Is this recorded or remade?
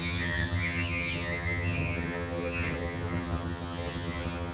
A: remade